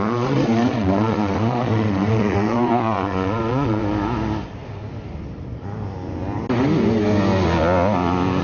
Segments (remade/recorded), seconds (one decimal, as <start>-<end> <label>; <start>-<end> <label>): 0.0-3.8 remade; 3.8-8.4 recorded